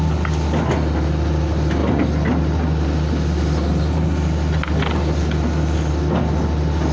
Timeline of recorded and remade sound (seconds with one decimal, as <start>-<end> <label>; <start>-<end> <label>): 0.0-6.9 recorded